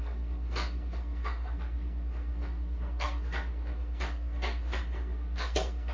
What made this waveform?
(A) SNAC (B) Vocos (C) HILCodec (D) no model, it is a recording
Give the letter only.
A